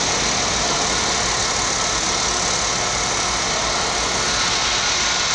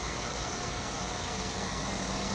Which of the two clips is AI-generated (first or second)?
second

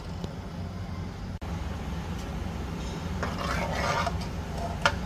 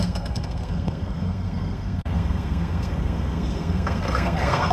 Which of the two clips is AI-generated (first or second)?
second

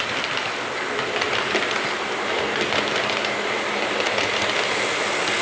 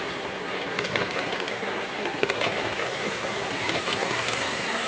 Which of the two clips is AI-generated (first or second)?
second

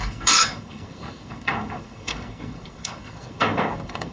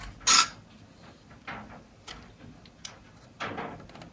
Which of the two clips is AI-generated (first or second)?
first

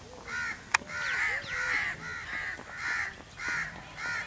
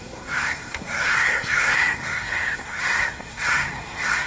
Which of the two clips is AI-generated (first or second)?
second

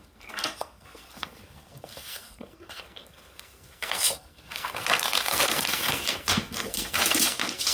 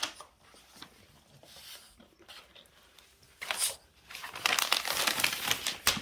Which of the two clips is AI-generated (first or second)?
first